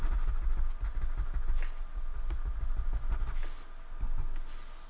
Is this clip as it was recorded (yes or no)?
yes